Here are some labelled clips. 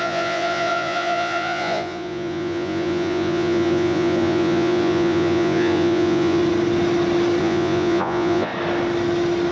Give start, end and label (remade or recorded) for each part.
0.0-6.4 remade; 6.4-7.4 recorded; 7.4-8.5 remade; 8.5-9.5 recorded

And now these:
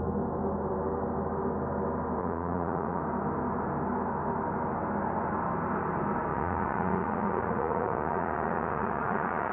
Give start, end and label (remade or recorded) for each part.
0.0-2.2 recorded; 2.2-3.0 remade; 3.0-6.3 recorded; 6.3-9.5 remade

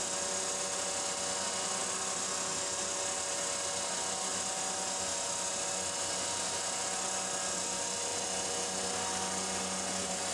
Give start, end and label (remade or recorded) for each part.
0.0-10.3 recorded

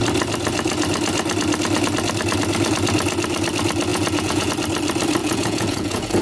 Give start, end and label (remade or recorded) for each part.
0.0-3.9 recorded; 3.9-4.5 remade; 4.5-5.2 recorded; 5.2-6.2 remade

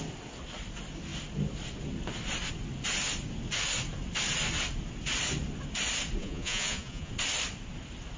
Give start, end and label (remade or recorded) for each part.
0.0-6.2 recorded; 6.2-7.1 remade; 7.1-8.2 recorded